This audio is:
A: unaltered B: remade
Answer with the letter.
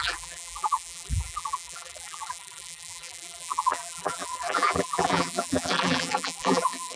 B